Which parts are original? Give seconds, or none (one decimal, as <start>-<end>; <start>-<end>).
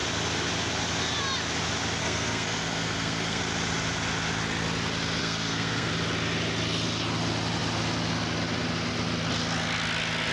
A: 0.0-2.0; 3.4-5.2; 5.9-10.3